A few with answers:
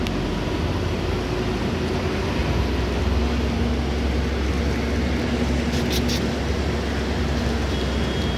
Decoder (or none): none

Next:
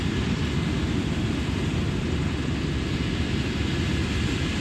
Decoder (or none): none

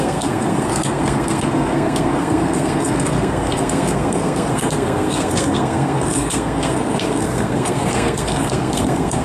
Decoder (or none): codec, SNAC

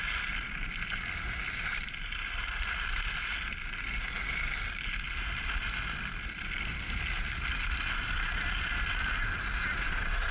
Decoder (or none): none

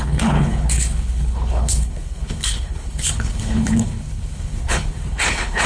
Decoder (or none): codec, HILCodec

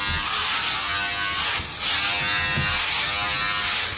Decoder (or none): none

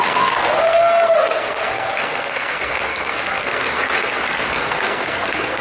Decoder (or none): codec, SNAC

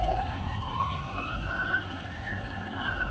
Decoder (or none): codec, SNAC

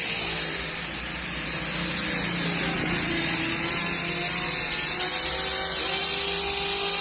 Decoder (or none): none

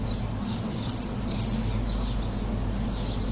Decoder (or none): none